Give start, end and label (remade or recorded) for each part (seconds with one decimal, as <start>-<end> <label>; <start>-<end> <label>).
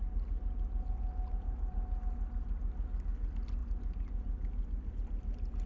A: 0.0-5.7 recorded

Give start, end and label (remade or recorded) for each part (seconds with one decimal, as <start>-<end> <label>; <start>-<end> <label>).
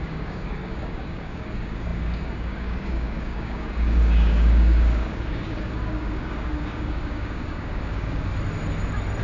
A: 0.0-8.3 remade; 8.3-9.2 recorded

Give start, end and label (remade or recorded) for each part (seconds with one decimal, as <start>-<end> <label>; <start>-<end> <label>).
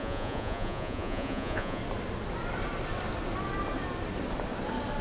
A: 0.0-1.8 remade; 1.8-5.0 recorded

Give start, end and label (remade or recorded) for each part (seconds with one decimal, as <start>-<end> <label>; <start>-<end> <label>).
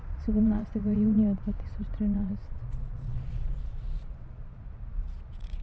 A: 0.0-5.6 remade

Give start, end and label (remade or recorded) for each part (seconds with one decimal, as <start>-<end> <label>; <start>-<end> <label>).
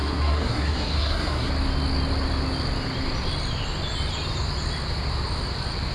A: 0.0-1.5 remade; 1.5-5.9 recorded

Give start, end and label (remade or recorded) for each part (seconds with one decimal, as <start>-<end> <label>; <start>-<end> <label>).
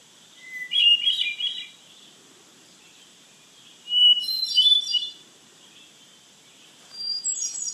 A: 0.0-7.7 remade